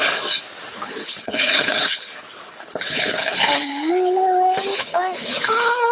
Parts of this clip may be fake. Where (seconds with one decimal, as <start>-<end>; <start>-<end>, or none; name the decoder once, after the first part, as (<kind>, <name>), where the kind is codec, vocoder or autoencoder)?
0.7-3.9 (codec, HILCodec); 4.7-5.9